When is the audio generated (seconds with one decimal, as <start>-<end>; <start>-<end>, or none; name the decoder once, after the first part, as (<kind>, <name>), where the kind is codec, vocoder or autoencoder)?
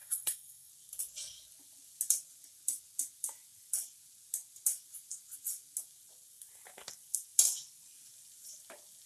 0.0-0.7 (codec, SNAC)